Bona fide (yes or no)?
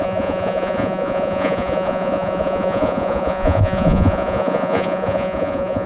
no